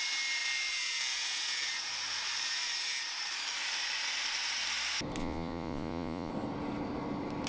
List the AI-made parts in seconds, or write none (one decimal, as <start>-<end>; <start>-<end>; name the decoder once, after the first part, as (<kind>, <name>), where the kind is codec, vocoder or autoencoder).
5.2-6.3 (vocoder, Vocos)